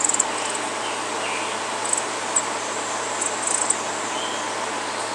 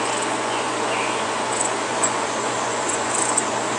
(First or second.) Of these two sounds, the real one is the first